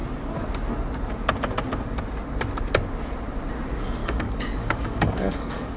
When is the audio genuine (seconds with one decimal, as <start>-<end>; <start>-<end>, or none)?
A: 0.0-4.0